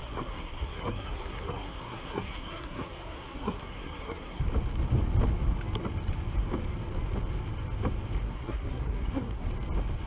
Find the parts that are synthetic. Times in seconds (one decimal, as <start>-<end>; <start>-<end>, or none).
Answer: 0.0-4.4; 8.2-9.5